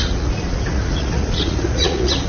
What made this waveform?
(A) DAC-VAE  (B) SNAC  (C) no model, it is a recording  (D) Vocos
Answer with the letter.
D